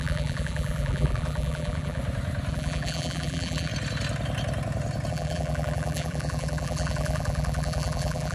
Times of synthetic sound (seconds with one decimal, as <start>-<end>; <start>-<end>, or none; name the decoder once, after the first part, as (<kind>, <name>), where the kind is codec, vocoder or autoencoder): 0.0-2.0 (vocoder, BigVGAN v2); 2.5-3.7; 5.1-8.3